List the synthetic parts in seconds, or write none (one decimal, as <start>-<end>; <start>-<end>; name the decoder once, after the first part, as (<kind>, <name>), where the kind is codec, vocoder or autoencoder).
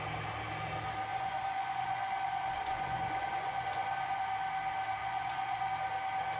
1.1-4.2 (vocoder, Vocos); 5.0-5.7